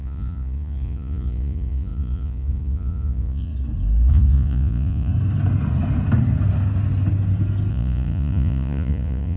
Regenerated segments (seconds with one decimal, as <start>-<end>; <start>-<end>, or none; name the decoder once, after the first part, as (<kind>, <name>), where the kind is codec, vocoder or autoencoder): 0.0-3.5 (vocoder, Vocos); 4.1-5.1; 7.7-9.4